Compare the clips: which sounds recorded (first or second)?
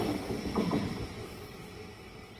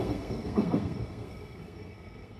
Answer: first